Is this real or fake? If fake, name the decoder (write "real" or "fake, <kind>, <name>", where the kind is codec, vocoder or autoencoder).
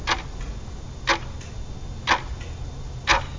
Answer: real